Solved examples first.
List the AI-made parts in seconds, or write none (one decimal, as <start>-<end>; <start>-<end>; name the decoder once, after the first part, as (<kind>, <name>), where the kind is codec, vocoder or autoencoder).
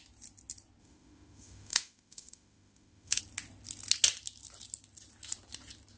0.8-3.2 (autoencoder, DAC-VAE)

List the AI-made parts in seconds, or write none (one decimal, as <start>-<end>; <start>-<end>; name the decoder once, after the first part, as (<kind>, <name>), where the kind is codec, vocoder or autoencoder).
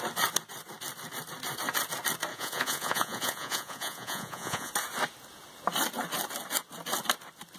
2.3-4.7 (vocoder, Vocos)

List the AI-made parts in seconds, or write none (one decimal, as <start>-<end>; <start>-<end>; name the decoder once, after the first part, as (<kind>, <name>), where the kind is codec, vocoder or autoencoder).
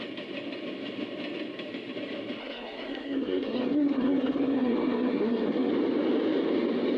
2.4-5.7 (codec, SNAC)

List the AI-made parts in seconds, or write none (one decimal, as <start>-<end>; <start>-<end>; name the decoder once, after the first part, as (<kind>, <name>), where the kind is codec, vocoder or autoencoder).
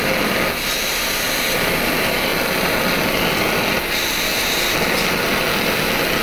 none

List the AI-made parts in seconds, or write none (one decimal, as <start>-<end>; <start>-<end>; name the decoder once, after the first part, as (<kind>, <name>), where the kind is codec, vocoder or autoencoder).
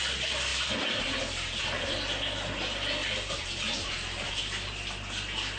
0.5-1.6 (vocoder, BigVGAN v2); 3.0-4.7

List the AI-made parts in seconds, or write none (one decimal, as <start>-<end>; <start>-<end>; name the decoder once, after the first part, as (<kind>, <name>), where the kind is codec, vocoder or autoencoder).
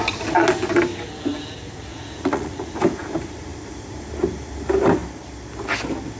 1.9-2.7 (vocoder, Vocos)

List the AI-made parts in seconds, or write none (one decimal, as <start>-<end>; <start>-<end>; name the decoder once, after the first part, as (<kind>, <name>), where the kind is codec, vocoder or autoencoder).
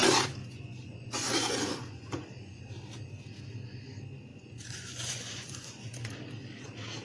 0.4-2.6 (vocoder, Vocos); 4.3-6.1